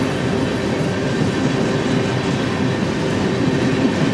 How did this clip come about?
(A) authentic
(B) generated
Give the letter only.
A